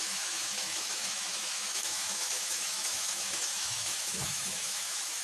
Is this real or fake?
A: fake